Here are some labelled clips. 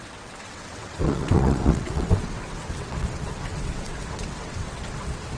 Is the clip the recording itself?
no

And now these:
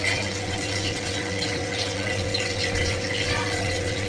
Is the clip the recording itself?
no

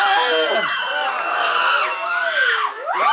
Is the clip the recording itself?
yes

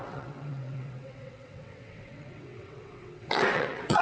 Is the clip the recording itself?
no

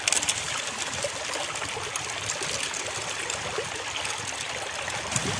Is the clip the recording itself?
yes